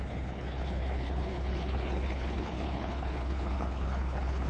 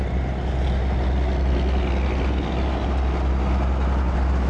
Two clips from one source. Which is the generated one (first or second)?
first